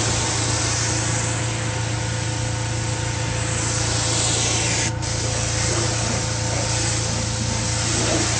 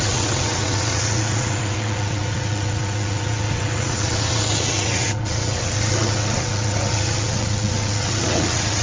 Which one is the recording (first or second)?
first